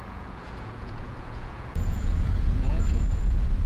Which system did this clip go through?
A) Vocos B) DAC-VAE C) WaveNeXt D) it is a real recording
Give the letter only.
A